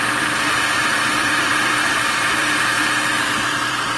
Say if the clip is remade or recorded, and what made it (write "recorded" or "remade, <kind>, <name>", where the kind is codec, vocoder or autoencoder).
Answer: remade, vocoder, BigVGAN v2